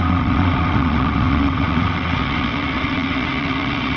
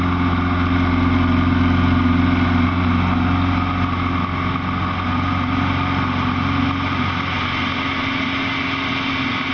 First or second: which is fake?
first